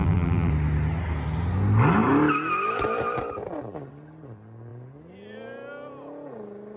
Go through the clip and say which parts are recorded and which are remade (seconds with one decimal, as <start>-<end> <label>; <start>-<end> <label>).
0.0-0.5 remade; 0.5-6.8 recorded